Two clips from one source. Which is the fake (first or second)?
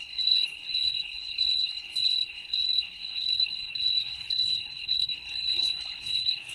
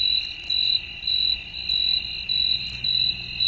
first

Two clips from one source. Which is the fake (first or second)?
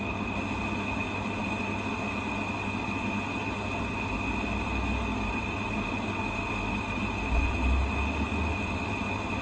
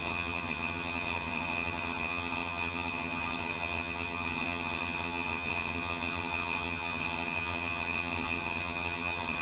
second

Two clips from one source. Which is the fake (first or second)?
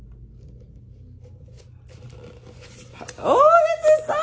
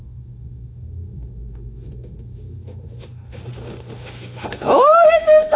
second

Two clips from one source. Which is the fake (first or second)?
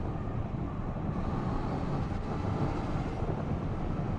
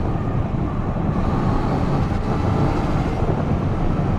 first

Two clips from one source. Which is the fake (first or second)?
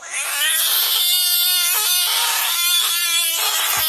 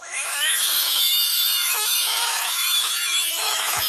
second